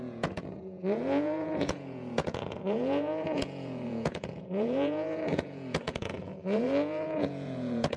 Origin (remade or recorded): remade